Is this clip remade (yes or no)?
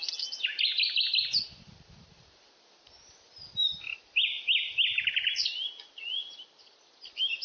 no